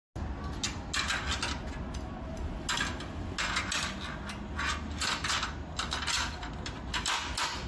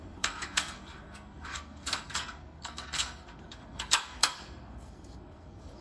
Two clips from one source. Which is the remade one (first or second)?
second